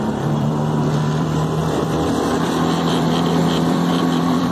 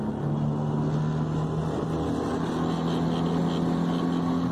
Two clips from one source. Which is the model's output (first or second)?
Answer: first